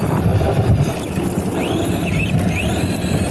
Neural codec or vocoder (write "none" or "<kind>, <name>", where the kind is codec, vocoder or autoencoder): none